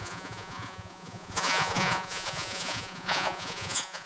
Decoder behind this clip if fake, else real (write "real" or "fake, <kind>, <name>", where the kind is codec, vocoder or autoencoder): fake, vocoder, Vocos